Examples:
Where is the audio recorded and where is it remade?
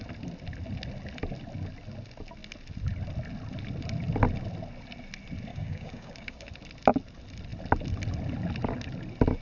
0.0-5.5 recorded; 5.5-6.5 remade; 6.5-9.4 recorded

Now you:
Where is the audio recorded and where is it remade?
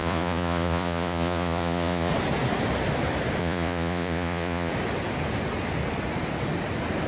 0.0-2.1 remade; 2.1-3.4 recorded; 3.4-4.7 remade; 4.7-7.1 recorded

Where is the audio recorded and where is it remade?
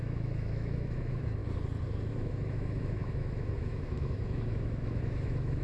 0.0-1.4 remade; 1.4-2.1 recorded; 2.1-5.6 remade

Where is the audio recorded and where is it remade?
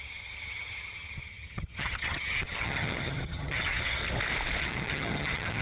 0.0-4.0 remade; 4.0-4.6 recorded; 4.6-5.6 remade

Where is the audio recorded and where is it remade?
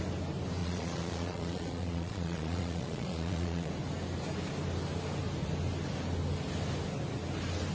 0.0-0.6 recorded; 0.6-3.7 remade; 3.7-7.7 recorded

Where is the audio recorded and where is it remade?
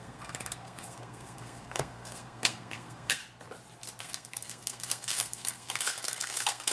0.0-3.2 remade; 3.2-4.0 recorded; 4.0-6.7 remade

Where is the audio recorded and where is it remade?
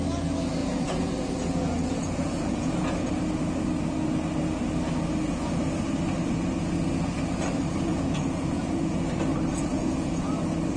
0.0-0.6 recorded; 0.6-3.2 remade; 3.2-7.9 recorded; 7.9-8.9 remade; 8.9-9.7 recorded; 9.7-10.3 remade; 10.3-10.8 recorded